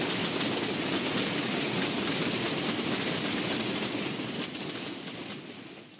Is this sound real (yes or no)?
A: yes